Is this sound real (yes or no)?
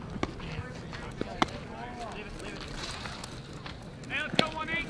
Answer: yes